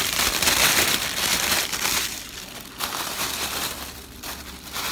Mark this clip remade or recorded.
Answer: remade